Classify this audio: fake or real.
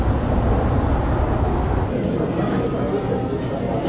real